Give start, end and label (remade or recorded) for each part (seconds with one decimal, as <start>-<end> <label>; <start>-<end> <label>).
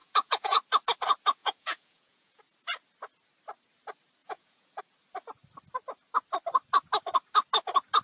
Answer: 0.0-0.6 remade; 0.6-1.4 recorded; 1.4-2.4 remade; 2.4-4.2 recorded; 4.2-4.8 remade; 4.8-8.0 recorded